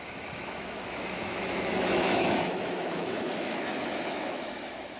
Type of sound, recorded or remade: remade